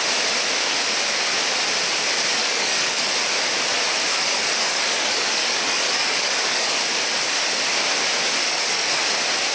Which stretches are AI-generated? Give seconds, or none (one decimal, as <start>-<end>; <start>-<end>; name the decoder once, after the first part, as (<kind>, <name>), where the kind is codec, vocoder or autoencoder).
2.4-3.1 (codec, DAC); 4.1-6.8; 8.4-9.0